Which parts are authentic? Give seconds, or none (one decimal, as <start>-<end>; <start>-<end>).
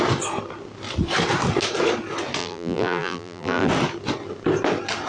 0.0-2.4; 3.7-5.1